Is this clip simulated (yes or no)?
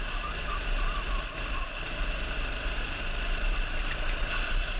yes